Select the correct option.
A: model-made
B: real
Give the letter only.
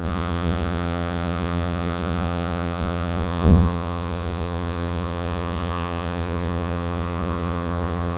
A